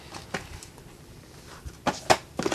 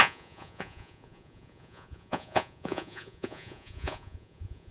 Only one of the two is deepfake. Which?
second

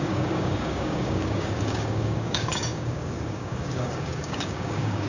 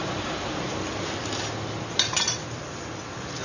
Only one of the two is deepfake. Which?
first